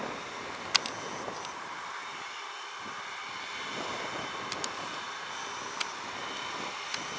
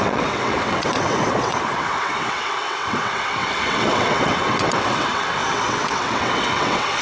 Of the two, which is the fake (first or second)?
second